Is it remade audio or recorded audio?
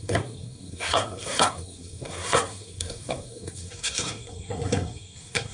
remade